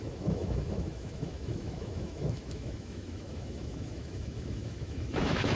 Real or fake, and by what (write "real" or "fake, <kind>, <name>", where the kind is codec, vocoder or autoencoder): fake, autoencoder, DAC-VAE